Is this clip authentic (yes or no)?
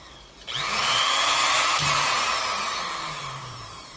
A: no